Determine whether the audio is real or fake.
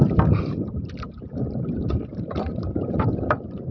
real